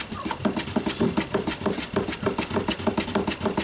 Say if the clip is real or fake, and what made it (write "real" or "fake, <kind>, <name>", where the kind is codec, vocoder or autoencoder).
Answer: real